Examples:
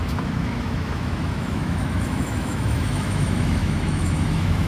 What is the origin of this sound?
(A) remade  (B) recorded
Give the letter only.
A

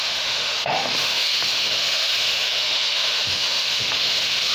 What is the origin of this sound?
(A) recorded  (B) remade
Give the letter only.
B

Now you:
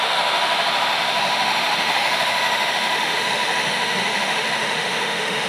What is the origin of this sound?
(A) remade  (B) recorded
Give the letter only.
A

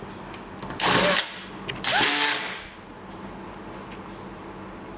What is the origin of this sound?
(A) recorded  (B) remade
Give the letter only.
A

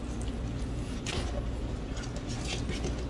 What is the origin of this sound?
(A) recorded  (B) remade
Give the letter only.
A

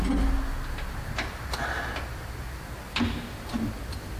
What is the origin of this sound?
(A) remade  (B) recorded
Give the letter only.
B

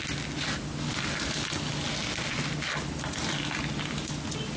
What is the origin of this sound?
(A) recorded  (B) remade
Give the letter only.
A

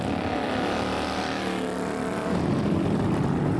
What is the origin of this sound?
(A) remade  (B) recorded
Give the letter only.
B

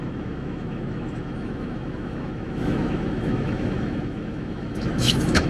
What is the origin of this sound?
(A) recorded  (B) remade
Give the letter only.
B